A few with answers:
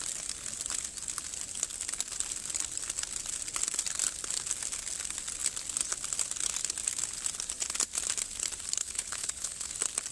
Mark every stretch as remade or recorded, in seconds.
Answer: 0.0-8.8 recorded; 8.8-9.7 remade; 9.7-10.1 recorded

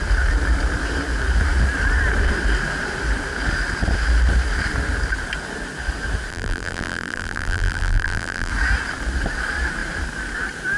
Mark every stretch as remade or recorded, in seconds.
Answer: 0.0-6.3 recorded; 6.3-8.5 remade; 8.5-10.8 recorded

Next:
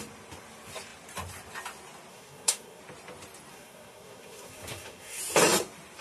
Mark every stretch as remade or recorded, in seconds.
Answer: 0.0-2.1 recorded; 2.1-2.8 remade; 2.8-3.5 recorded; 3.5-5.2 remade; 5.2-6.0 recorded